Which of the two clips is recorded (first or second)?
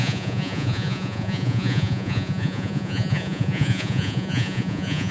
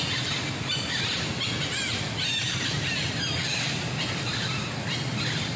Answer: second